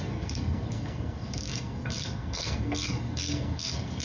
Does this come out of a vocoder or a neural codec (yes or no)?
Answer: yes